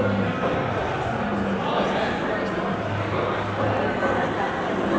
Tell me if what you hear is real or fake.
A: real